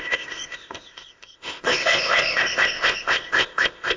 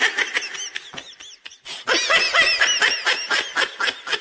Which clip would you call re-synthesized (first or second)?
first